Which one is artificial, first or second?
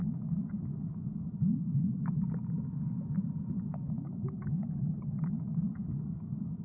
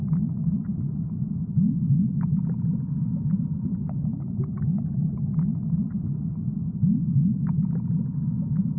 first